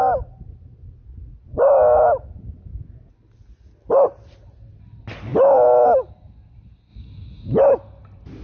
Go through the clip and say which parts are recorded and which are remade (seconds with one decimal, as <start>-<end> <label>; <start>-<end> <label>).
0.0-8.4 recorded